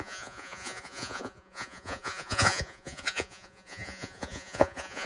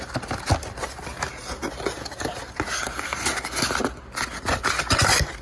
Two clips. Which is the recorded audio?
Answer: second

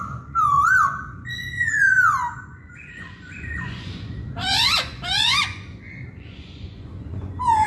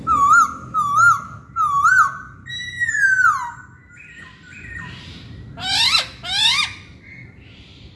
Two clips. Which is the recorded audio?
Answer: second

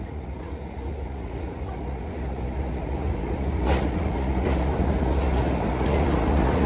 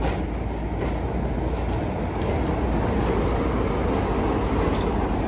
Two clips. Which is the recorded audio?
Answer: second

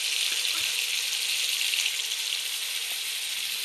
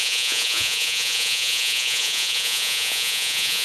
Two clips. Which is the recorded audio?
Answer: first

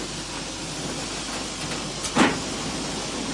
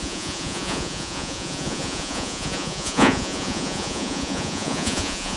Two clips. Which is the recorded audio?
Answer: first